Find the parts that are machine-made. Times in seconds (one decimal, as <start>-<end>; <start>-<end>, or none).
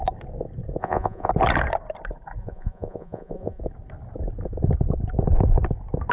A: 0.8-1.3; 2.4-3.6